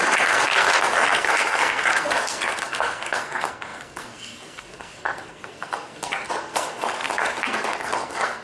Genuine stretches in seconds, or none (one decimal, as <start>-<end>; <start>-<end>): none